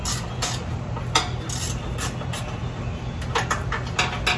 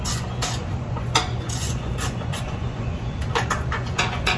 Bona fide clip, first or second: first